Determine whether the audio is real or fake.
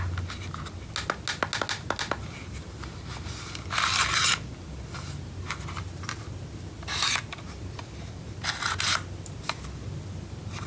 real